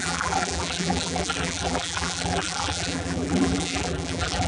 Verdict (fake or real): fake